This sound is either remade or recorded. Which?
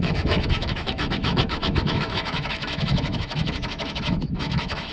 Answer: remade